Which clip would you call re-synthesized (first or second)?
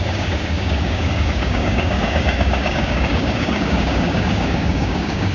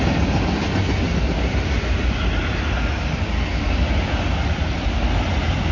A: first